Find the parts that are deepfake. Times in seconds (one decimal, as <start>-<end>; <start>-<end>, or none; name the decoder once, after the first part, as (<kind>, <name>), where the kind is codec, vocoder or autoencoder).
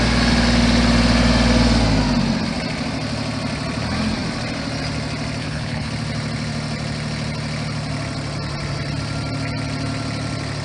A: 5.4-5.9 (codec, HILCodec)